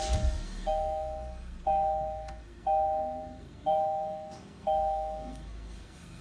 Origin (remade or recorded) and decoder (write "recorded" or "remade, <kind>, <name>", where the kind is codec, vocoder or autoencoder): remade, codec, SNAC